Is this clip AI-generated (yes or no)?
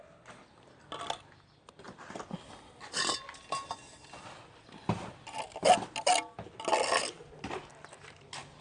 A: no